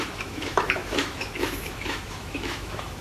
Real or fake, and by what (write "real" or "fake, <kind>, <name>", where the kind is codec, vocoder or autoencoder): fake, autoencoder, DAC-VAE